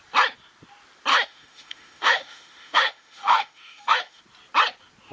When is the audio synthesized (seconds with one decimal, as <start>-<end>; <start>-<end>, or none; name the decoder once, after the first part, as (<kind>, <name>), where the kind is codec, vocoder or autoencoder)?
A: 1.1-4.2 (autoencoder, DAC-VAE)